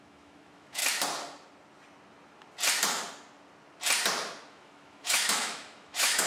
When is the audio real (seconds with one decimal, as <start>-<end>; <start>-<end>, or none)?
0.8-4.5